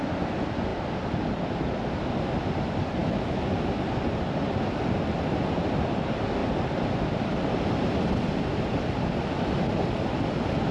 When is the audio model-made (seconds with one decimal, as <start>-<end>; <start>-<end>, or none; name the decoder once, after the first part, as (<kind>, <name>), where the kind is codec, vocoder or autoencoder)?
3.0-3.5 (autoencoder, DAC-VAE)